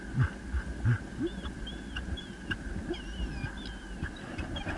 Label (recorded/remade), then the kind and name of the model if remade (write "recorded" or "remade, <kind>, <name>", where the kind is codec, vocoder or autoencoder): recorded